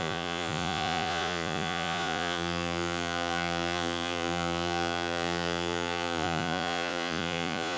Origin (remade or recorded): remade